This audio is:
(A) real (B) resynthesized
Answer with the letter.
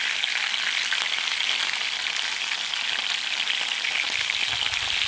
A